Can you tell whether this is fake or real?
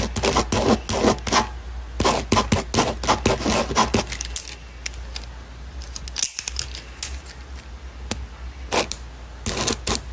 real